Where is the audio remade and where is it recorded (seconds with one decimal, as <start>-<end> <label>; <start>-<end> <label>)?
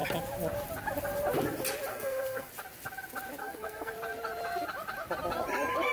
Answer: 0.0-1.9 recorded; 1.9-2.5 remade; 2.5-3.4 recorded; 3.4-3.9 remade; 3.9-5.9 recorded